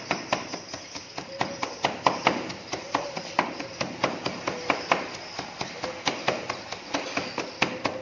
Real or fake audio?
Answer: real